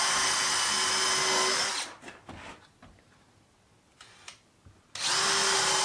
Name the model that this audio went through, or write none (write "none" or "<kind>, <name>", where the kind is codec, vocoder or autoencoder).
none